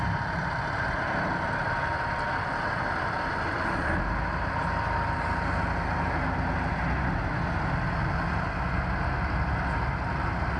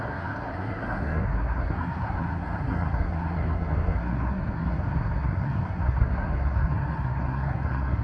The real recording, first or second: first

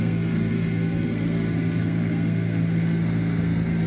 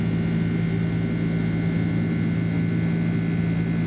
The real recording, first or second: second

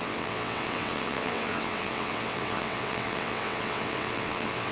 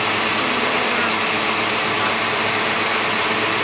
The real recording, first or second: second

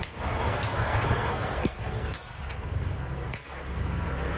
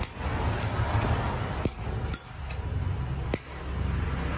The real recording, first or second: second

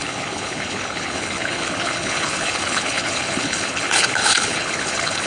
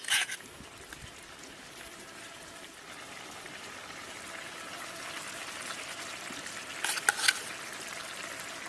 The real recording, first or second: second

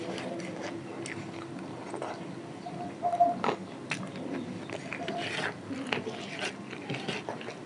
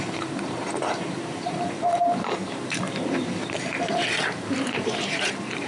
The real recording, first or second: first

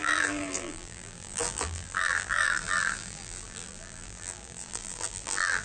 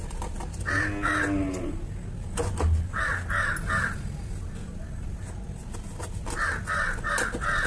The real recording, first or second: second